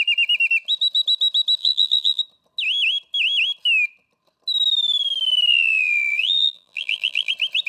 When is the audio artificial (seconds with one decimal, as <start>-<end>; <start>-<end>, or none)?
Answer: 1.6-2.2; 5.5-7.3